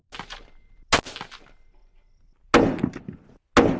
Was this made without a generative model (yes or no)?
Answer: yes